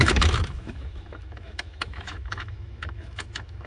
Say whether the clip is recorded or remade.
remade